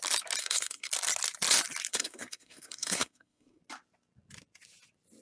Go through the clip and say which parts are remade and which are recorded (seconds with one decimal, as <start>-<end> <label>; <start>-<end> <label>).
0.0-0.4 recorded; 0.4-0.9 remade; 0.9-1.9 recorded; 1.9-3.6 remade; 3.6-5.2 recorded